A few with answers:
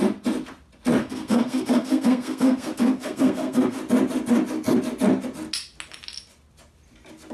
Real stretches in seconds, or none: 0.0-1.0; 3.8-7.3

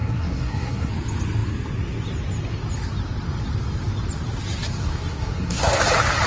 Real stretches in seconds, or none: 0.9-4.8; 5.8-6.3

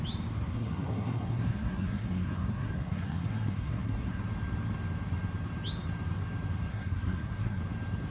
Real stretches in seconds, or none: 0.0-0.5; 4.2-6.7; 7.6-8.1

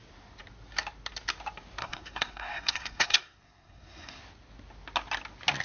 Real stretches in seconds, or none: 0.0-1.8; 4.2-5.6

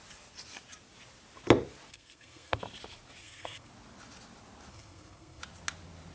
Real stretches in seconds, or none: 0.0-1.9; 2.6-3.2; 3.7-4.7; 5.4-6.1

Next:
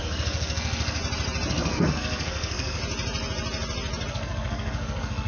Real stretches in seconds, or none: 1.0-1.5; 2.8-4.1